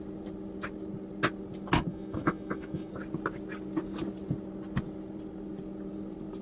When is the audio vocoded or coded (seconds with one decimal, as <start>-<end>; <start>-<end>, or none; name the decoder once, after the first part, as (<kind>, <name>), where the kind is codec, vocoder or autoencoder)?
1.9-2.9 (autoencoder, DAC-VAE)